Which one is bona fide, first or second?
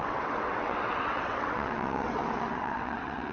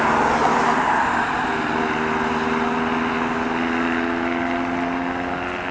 second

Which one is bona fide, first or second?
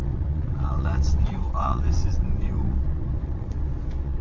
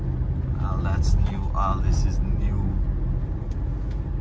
second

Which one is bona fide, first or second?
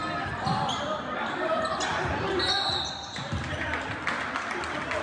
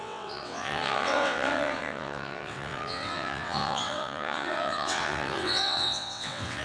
first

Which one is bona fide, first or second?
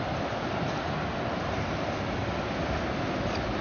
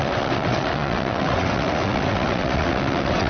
first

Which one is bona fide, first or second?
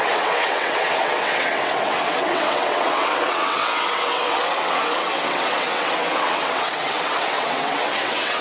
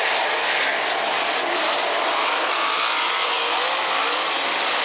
second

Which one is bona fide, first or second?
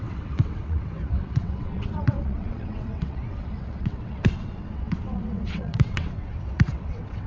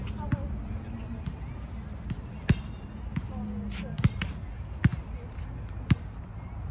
second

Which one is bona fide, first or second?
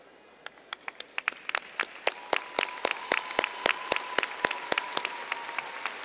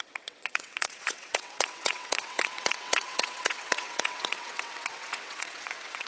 first